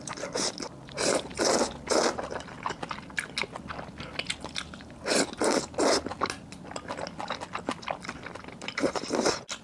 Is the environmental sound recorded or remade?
recorded